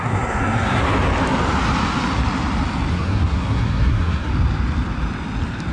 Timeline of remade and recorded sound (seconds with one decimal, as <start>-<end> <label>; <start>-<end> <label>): 0.0-0.8 remade; 0.8-2.9 recorded; 2.9-4.3 remade; 4.3-5.7 recorded